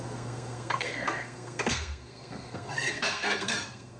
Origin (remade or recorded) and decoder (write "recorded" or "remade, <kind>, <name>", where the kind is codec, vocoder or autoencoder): remade, codec, SNAC